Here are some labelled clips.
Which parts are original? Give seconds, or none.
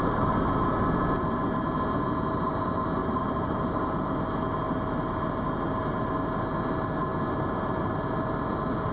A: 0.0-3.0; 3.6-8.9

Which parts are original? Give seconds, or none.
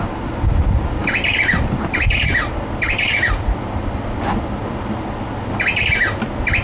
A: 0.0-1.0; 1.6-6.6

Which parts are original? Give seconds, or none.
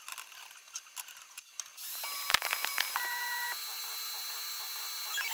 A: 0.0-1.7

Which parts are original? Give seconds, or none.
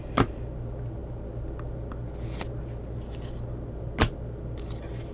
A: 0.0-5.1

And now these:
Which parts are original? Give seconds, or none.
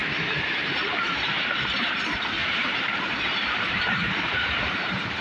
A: 1.9-2.4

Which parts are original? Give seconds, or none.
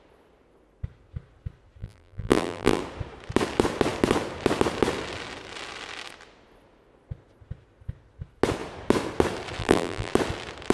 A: 0.0-1.8; 2.8-9.6; 10.1-10.7